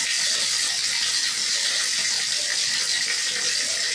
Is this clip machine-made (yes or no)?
no